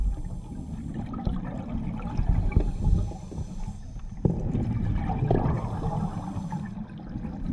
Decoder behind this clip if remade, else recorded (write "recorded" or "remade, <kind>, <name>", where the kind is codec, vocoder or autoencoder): recorded